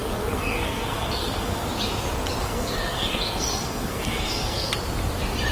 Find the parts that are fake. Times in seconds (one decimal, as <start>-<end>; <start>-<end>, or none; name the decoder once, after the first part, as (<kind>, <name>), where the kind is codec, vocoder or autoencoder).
0.0-1.6 (codec, SNAC); 2.4-4.7